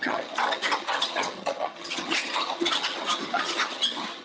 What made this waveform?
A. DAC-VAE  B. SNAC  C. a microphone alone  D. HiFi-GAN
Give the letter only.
D